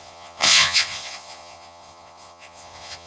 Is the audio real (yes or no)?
no